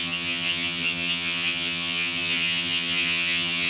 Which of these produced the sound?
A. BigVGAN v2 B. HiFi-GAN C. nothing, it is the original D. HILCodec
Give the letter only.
B